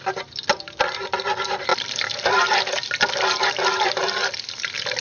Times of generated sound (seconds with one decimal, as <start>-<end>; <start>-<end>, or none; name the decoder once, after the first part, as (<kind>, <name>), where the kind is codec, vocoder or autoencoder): 1.7-5.0 (vocoder, BigVGAN v2)